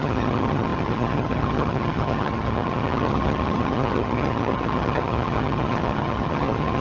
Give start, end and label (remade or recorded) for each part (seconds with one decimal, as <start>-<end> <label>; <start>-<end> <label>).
0.0-6.8 remade